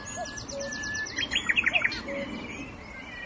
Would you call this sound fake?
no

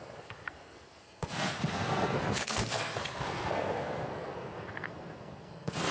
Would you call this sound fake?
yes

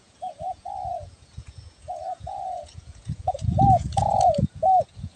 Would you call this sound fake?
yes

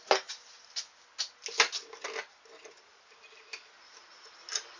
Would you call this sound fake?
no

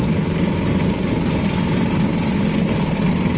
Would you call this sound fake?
no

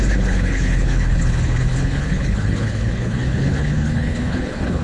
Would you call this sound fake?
yes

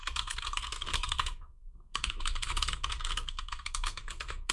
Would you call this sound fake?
yes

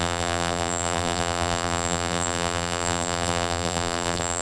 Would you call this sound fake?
yes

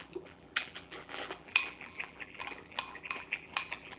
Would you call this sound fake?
yes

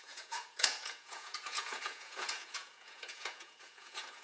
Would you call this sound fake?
yes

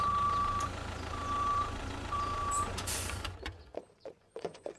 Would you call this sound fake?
yes